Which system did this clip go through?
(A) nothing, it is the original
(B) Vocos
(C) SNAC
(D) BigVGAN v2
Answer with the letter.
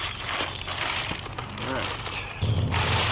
A